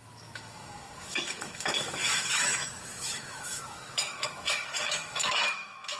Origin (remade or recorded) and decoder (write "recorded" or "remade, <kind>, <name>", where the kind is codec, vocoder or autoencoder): remade, autoencoder, DAC-VAE